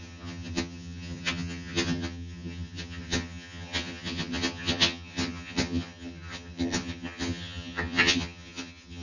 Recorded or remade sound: remade